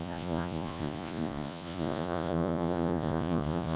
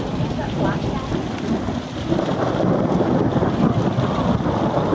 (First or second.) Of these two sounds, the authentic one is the second